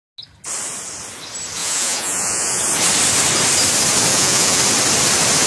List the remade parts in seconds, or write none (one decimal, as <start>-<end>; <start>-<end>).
1.6-2.6; 4.1-4.6